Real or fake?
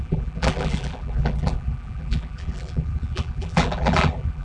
fake